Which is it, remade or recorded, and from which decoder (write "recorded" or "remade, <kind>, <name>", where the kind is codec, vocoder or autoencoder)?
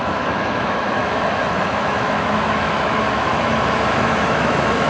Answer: remade, autoencoder, DAC-VAE